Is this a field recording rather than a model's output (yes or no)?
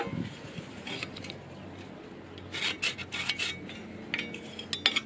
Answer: yes